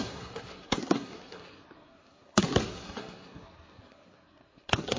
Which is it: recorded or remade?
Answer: remade